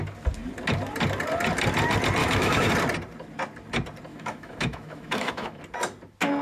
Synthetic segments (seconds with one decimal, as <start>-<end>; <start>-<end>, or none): 2.2-2.7; 4.1-5.6